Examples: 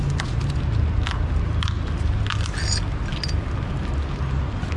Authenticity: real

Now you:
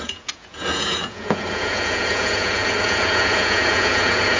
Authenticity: fake